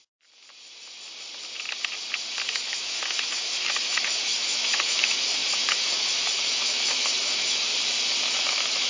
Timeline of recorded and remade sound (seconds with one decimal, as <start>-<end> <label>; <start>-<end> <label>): 0.0-2.5 recorded; 2.5-7.7 remade; 7.7-8.3 recorded; 8.3-8.9 remade